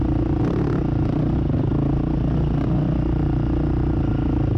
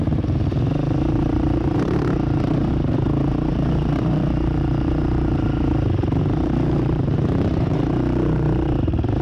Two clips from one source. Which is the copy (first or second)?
second